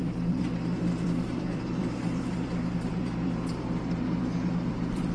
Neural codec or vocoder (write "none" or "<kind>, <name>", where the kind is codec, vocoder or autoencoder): vocoder, BigVGAN v2